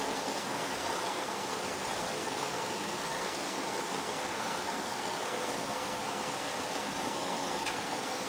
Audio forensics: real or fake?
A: fake